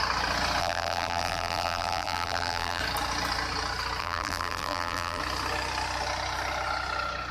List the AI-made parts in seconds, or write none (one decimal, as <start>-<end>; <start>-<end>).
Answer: 0.6-2.8; 4.0-5.2

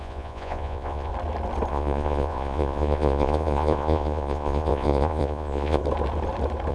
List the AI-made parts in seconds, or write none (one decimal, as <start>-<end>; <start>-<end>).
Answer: 0.0-1.1; 1.7-5.8

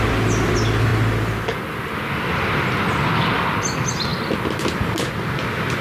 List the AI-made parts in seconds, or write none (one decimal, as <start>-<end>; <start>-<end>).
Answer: none

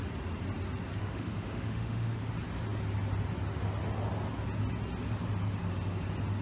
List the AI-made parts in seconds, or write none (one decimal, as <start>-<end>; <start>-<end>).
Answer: 1.0-2.2